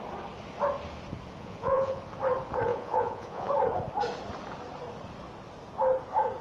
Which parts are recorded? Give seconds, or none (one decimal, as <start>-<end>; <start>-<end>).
0.0-1.4; 2.0-2.7; 3.5-6.4